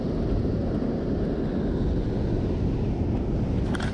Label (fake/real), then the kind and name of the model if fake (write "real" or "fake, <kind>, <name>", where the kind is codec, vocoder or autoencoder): real